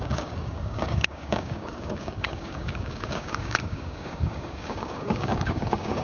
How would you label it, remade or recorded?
remade